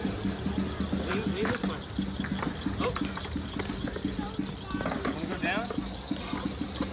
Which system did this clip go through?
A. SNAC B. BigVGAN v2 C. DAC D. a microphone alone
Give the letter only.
D